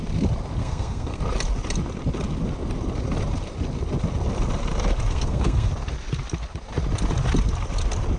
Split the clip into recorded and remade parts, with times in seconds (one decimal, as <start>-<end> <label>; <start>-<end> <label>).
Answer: 0.0-0.6 recorded; 0.6-1.2 remade; 1.2-5.1 recorded; 5.1-5.7 remade; 5.7-8.2 recorded